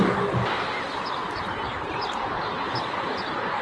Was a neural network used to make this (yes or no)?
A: no